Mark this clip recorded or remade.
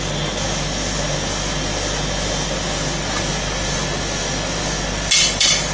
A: recorded